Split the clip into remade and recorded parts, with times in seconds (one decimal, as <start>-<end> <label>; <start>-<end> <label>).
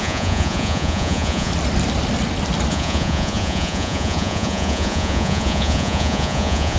0.0-1.5 remade; 1.5-2.7 recorded; 2.7-6.8 remade